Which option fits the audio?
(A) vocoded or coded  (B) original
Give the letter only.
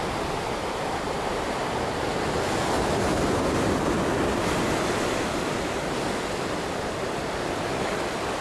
B